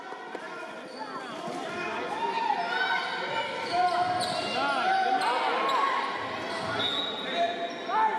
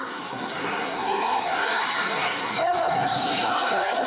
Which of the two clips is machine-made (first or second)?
second